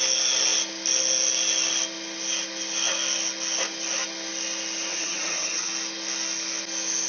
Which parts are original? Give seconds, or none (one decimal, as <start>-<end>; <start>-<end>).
0.0-4.9; 5.7-7.1